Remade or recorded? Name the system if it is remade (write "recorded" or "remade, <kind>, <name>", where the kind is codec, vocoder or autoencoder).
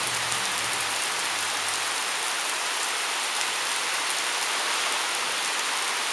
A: recorded